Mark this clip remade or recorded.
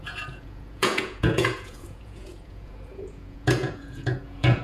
remade